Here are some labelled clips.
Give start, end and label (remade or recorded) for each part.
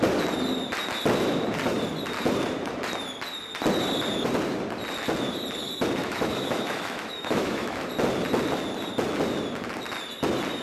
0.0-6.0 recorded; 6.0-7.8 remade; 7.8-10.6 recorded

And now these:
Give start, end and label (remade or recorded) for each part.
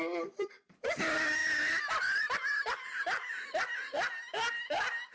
0.0-5.1 recorded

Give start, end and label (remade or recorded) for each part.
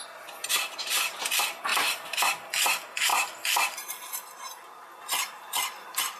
0.0-0.4 recorded; 0.4-0.9 remade; 0.9-1.7 recorded; 1.7-2.2 remade; 2.2-6.2 recorded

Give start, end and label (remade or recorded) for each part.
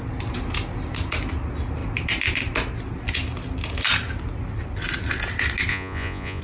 0.0-5.7 recorded; 5.7-6.4 remade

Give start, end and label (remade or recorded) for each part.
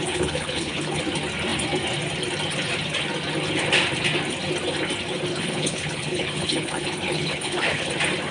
0.0-1.0 remade; 1.0-5.3 recorded; 5.3-7.9 remade; 7.9-8.3 recorded